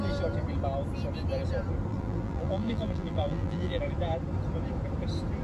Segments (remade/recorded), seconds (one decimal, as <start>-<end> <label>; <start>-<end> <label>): 0.0-1.9 recorded; 1.9-3.8 remade; 3.8-5.4 recorded